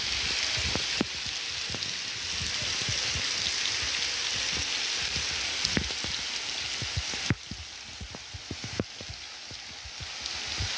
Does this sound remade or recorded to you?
recorded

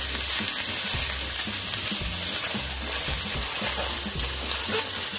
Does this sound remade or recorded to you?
recorded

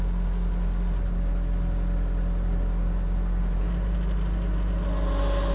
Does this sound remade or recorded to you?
recorded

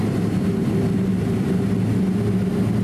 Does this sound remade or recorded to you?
recorded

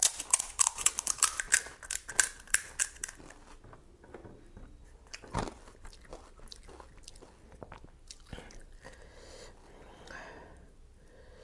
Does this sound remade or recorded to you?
recorded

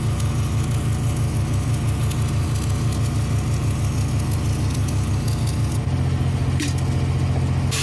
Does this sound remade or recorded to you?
recorded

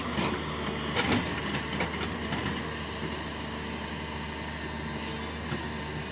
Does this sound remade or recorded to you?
recorded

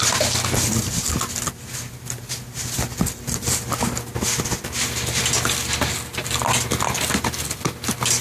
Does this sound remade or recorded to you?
recorded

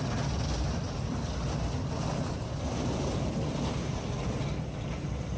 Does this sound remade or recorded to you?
recorded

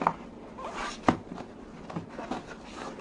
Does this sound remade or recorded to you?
recorded